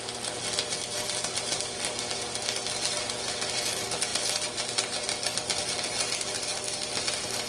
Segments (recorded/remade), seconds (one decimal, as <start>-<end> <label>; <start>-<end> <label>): 0.0-7.5 recorded